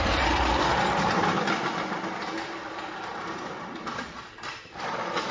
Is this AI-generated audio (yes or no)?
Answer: yes